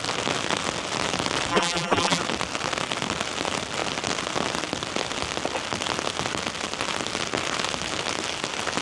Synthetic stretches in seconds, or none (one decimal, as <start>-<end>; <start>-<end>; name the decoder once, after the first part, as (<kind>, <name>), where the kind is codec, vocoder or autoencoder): 1.5-2.2 (vocoder, BigVGAN v2)